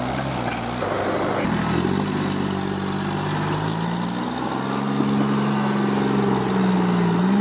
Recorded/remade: recorded